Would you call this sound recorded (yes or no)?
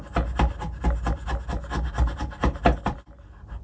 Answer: yes